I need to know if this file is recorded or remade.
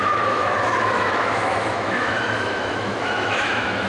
remade